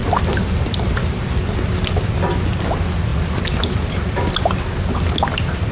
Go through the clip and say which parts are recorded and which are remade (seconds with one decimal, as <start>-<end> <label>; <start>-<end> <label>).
0.0-5.7 recorded

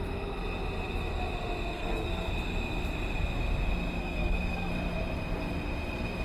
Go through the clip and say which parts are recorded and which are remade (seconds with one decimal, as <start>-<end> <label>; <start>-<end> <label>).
0.0-1.7 recorded; 1.7-2.3 remade; 2.3-4.0 recorded; 4.0-4.7 remade; 4.7-6.2 recorded

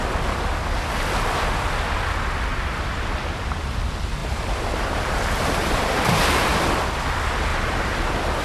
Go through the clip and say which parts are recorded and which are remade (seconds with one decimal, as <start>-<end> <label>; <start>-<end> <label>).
0.0-2.5 recorded; 2.5-3.8 remade; 3.8-4.2 recorded; 4.2-6.0 remade; 6.0-8.4 recorded

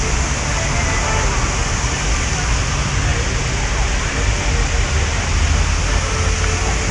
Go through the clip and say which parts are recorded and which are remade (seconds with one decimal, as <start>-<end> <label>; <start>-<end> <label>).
0.0-6.9 recorded